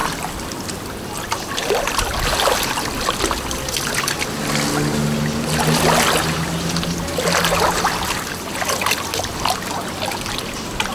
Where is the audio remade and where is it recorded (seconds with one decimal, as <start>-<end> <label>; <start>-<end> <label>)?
0.0-10.9 recorded